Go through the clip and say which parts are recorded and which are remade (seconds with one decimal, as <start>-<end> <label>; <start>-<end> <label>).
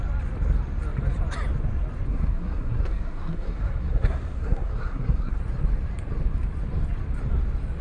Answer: 0.0-2.1 recorded; 2.1-5.4 remade; 5.4-7.8 recorded